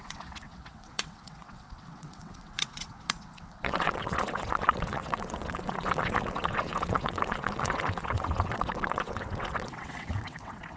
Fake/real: fake